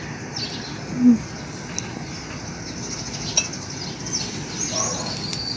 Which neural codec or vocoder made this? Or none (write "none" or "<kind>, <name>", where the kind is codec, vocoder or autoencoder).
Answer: none